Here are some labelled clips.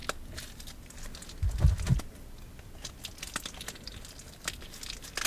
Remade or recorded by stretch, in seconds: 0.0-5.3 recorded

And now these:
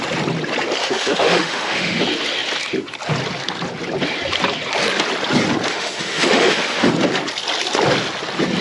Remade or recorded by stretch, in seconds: 0.0-0.8 recorded; 0.8-2.0 remade; 2.0-5.7 recorded; 5.7-6.9 remade; 6.9-8.6 recorded

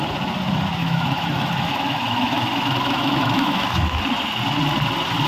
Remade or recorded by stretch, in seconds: 0.0-0.8 recorded; 0.8-4.0 remade; 4.0-5.3 recorded

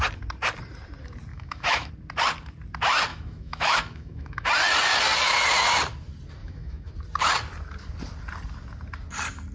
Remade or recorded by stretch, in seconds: 0.0-1.3 recorded; 1.3-1.9 remade; 1.9-3.1 recorded; 3.1-4.5 remade; 4.5-6.4 recorded; 6.4-6.9 remade; 6.9-9.5 recorded